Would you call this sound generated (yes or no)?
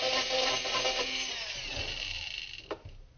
no